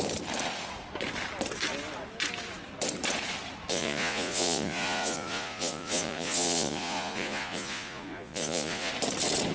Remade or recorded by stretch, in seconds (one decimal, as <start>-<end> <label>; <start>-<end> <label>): 0.0-3.7 recorded; 3.7-8.9 remade; 8.9-9.5 recorded